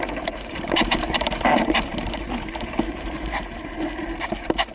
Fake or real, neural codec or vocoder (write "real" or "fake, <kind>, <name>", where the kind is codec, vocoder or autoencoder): fake, vocoder, BigVGAN v2